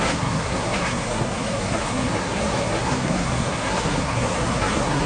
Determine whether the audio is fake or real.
fake